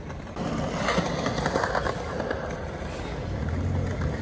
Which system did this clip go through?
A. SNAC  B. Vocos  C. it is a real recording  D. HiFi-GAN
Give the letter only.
C